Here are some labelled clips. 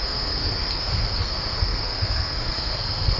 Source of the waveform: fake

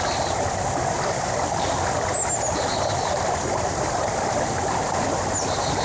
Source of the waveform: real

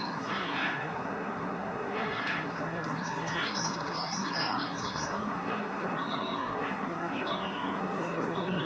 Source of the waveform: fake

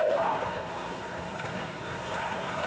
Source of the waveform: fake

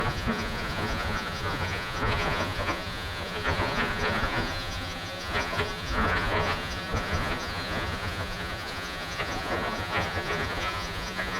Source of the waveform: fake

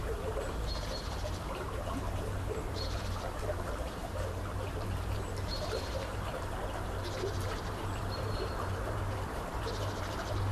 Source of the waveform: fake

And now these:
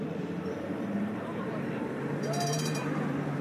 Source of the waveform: fake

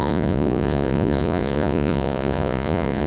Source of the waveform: fake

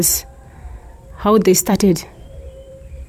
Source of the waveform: fake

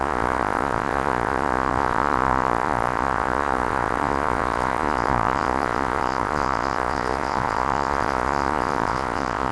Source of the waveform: fake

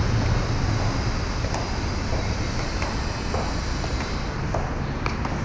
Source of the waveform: real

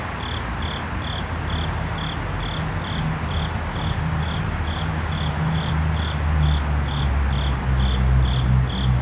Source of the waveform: real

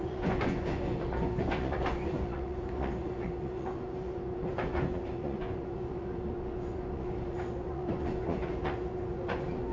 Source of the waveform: fake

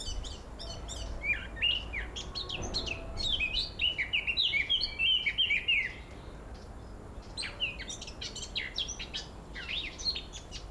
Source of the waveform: real